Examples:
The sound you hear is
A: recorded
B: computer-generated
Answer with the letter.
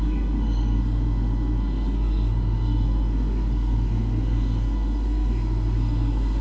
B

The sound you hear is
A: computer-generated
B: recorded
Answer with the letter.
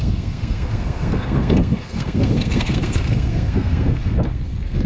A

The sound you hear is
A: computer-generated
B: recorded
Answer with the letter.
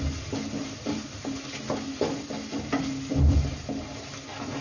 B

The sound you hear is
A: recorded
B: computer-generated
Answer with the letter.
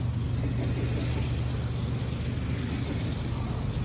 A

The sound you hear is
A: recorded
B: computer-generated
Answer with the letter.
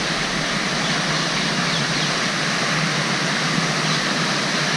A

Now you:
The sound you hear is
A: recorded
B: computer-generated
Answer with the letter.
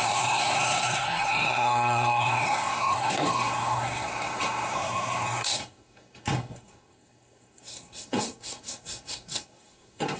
B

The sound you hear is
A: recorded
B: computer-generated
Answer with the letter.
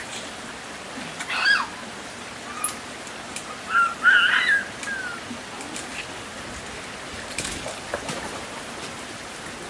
A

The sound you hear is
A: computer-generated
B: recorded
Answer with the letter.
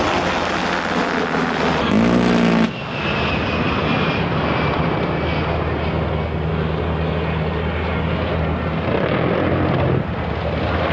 B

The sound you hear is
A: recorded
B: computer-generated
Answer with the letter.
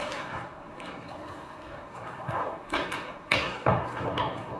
B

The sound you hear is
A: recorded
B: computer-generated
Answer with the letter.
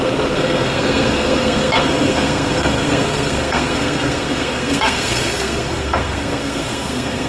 B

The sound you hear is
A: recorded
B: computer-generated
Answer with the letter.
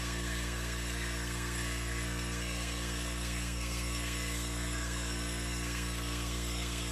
B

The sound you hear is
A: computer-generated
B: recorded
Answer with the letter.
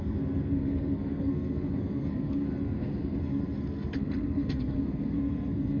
A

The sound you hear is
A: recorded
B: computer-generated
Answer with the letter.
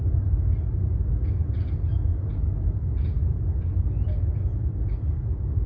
A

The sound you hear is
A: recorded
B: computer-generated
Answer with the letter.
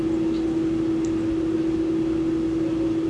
A